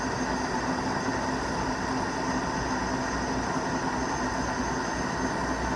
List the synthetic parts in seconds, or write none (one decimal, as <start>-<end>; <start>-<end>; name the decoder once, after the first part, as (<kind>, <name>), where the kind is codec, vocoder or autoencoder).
none

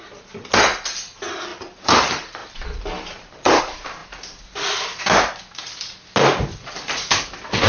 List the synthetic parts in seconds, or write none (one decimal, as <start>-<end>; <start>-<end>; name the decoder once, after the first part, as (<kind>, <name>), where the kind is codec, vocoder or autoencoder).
1.5-2.0 (vocoder, BigVGAN v2); 2.4-3.6

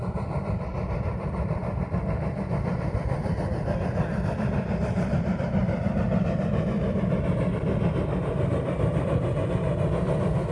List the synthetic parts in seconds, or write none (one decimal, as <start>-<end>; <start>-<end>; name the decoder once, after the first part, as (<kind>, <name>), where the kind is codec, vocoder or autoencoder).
5.6-6.4 (vocoder, BigVGAN v2)

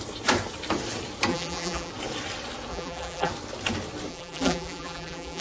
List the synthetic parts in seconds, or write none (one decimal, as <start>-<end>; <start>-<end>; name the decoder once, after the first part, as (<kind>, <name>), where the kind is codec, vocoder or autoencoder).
1.3-1.9 (vocoder, BigVGAN v2); 2.7-3.3; 4.1-5.4

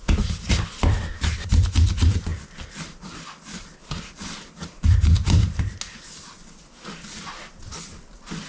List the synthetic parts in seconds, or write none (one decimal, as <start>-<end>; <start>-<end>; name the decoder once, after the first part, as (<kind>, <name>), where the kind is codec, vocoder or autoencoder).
2.3-5.6 (vocoder, BigVGAN v2)

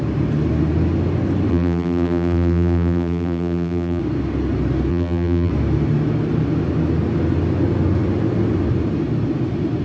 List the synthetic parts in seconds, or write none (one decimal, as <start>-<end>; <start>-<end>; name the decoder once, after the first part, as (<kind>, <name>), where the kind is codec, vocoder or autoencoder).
1.5-4.0 (vocoder, BigVGAN v2); 4.9-5.5